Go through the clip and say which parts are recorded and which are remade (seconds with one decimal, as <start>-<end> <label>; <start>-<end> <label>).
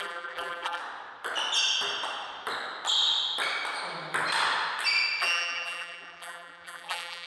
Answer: 0.0-0.8 remade; 0.8-5.2 recorded; 5.2-7.3 remade